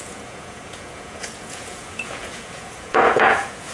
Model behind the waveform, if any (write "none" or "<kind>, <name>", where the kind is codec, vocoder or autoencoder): vocoder, Vocos